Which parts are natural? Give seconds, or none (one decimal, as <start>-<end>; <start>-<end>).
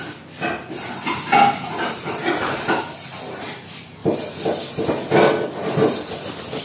0.0-6.6